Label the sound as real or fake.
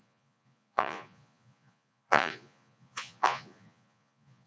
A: fake